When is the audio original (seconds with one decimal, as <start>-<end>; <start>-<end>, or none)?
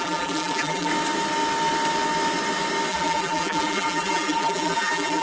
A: 0.9-2.9